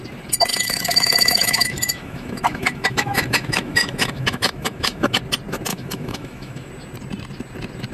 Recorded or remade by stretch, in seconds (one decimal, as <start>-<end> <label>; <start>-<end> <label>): 0.0-0.5 recorded; 0.5-5.2 remade; 5.2-5.7 recorded; 5.7-6.7 remade; 6.7-7.9 recorded